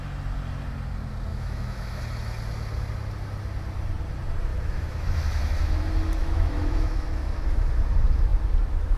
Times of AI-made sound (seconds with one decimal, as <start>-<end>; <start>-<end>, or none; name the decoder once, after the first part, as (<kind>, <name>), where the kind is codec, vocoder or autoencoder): 1.3-2.0 (autoencoder, DAC-VAE); 4.5-5.8; 6.2-7.7